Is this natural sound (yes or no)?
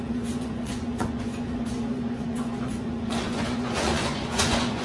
no